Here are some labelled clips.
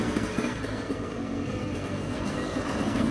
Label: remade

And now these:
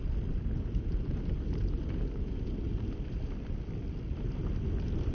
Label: recorded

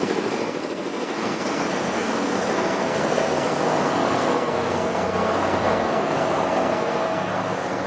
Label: remade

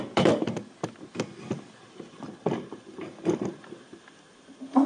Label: recorded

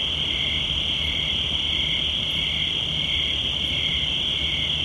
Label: recorded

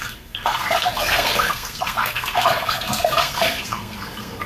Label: remade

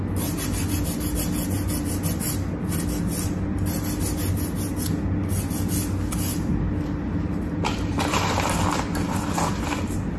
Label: recorded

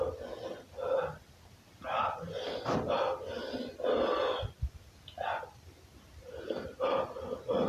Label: recorded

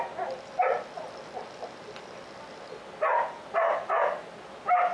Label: recorded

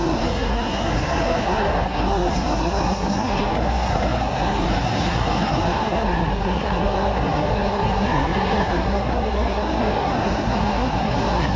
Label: remade